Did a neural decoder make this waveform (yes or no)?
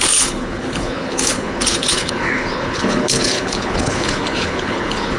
yes